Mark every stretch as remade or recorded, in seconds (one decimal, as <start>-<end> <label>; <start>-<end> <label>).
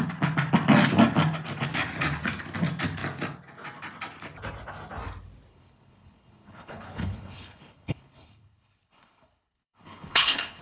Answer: 0.0-5.5 recorded; 5.5-10.6 remade